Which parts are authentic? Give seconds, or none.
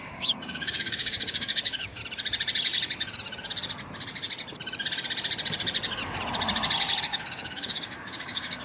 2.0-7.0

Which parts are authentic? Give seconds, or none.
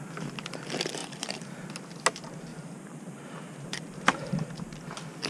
0.0-1.0; 1.5-2.5; 4.5-5.3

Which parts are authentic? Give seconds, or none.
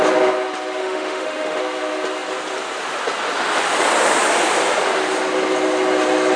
0.0-0.8; 1.6-6.4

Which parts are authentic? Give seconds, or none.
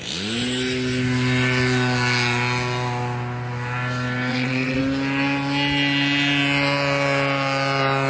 0.0-4.3; 4.8-8.1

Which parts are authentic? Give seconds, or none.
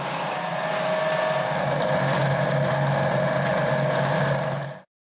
0.0-5.1